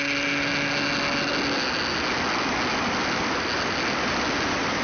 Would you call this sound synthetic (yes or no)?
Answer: no